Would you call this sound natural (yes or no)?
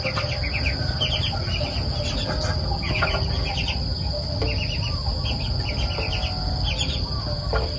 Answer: yes